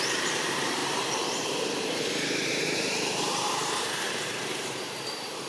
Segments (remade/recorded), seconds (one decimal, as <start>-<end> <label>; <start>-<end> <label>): 0.0-5.5 remade